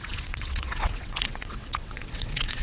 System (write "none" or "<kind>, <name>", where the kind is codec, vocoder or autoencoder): vocoder, WaveNeXt